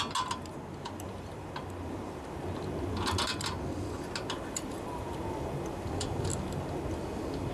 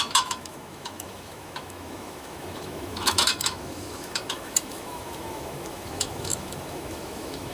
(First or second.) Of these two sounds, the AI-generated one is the second